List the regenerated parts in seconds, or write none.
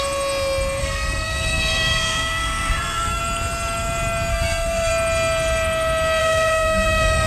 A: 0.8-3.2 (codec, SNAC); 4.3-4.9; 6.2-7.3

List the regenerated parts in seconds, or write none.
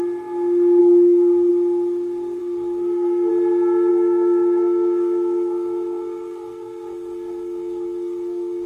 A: 0.8-1.5 (codec, SNAC); 2.4-3.3; 3.9-8.7